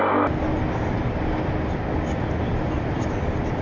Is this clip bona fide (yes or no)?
yes